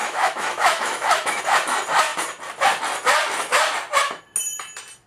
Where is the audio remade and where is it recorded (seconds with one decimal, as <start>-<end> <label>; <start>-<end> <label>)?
0.0-1.4 remade; 1.4-5.1 recorded